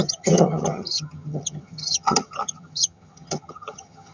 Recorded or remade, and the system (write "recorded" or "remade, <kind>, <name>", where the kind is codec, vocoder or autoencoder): remade, vocoder, HiFi-GAN